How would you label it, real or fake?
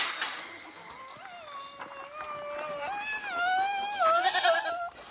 real